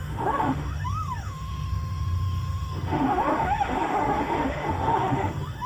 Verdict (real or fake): fake